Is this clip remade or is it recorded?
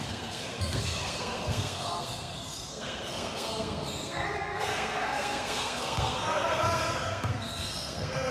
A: remade